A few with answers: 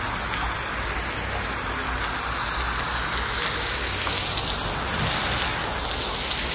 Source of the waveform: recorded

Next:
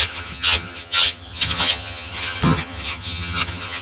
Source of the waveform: remade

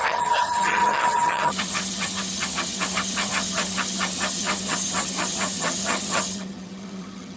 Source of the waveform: remade